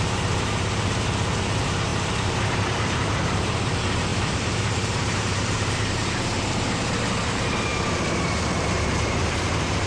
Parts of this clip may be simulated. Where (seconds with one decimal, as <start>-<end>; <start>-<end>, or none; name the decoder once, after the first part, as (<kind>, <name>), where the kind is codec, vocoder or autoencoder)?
0.0-7.7 (vocoder, BigVGAN v2); 8.4-9.9